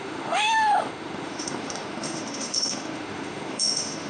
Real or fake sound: fake